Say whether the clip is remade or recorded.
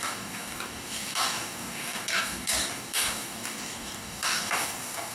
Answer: remade